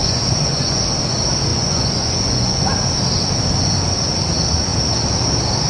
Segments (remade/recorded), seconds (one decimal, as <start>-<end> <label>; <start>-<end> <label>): 0.0-0.8 remade; 0.8-1.5 recorded; 1.5-2.6 remade; 2.6-5.7 recorded